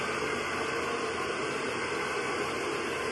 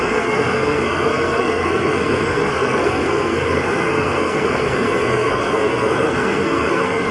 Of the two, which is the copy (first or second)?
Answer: second